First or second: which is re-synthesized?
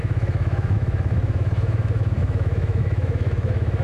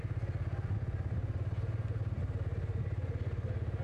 first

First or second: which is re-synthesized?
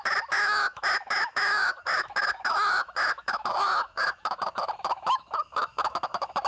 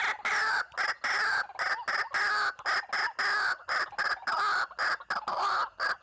first